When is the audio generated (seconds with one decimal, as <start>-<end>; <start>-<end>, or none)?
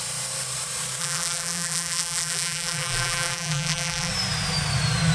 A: 1.0-4.1